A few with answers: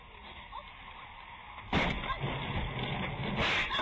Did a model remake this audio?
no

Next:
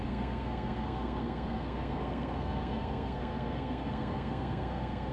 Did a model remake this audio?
yes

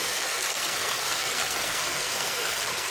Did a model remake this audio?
yes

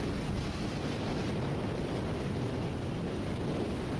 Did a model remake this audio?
no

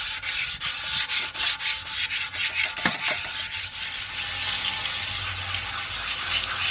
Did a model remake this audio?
no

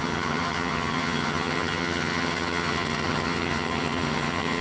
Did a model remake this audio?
yes